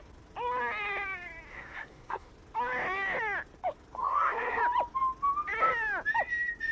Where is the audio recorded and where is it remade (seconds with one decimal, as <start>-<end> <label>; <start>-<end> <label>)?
0.0-1.5 recorded; 1.5-2.3 remade; 2.3-4.0 recorded; 4.0-4.6 remade; 4.6-6.7 recorded